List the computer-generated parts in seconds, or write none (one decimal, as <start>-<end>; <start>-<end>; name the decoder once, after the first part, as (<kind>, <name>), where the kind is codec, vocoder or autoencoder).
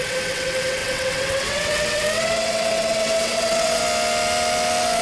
0.0-3.8 (vocoder, WaveNeXt)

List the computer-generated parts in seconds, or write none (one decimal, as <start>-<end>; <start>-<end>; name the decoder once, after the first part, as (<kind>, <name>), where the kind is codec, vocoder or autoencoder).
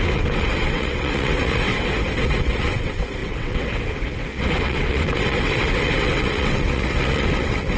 0.0-1.7 (vocoder, WaveNeXt); 2.4-7.8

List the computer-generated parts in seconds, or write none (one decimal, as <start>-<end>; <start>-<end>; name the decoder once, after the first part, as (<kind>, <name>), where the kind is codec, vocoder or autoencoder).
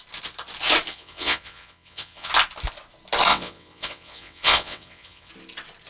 0.9-2.3 (vocoder, WaveNeXt); 3.3-5.3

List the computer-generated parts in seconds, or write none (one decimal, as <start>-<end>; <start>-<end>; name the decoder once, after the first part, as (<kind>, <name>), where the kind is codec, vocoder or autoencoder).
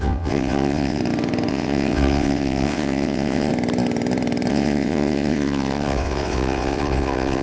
0.0-1.0 (vocoder, WaveNeXt); 1.5-3.5; 4.5-7.4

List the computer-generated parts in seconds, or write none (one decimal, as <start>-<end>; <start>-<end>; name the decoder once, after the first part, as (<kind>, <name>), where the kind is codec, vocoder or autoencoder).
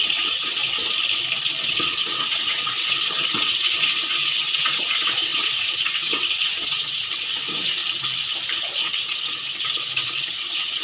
0.0-0.8 (vocoder, WaveNeXt); 1.6-7.8; 8.6-10.8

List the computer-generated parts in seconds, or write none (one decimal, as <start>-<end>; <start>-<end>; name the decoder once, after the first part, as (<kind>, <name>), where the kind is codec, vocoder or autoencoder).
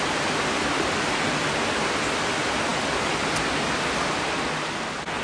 none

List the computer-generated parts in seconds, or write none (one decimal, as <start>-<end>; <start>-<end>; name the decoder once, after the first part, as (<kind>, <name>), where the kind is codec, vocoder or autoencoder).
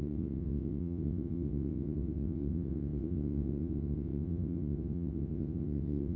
0.0-6.2 (vocoder, WaveNeXt)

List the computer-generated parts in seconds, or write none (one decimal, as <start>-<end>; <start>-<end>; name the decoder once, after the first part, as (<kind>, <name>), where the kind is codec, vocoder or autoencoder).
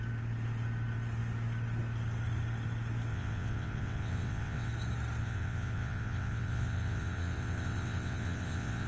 3.1-4.7 (vocoder, WaveNeXt); 5.2-8.9